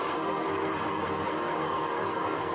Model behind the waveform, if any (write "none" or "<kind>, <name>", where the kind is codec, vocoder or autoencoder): codec, SNAC